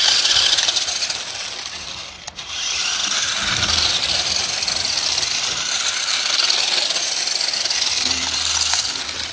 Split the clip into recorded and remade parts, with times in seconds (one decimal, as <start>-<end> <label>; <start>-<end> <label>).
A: 0.0-9.3 recorded